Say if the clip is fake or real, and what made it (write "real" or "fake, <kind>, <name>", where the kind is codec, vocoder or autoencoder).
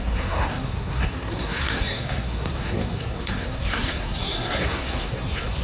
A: fake, codec, SNAC